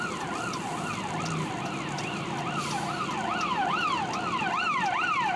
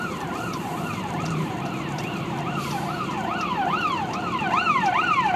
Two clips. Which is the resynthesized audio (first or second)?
second